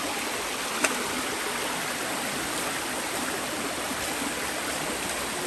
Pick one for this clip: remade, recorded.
remade